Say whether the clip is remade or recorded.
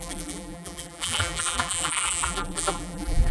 remade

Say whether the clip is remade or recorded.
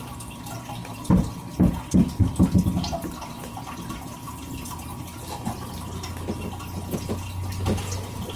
recorded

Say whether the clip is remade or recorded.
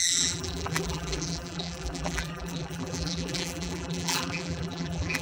remade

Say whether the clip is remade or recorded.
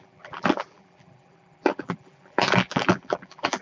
remade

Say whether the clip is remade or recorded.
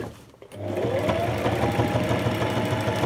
recorded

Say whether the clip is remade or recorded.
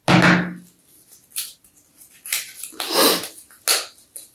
recorded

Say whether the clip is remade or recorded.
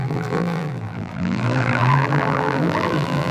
remade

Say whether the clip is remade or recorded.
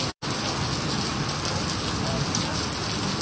recorded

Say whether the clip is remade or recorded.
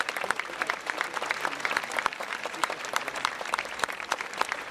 remade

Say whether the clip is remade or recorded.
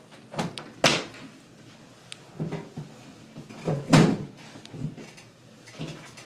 recorded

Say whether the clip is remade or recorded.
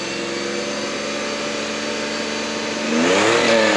recorded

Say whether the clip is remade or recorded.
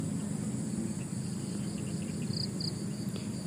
recorded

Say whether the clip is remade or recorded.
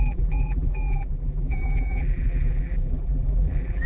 remade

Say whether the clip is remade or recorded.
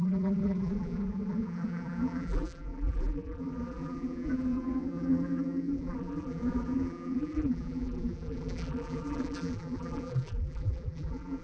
remade